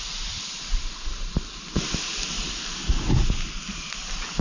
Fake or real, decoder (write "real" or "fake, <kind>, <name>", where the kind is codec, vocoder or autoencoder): real